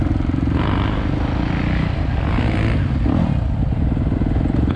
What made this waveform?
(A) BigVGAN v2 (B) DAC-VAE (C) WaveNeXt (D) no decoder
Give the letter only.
D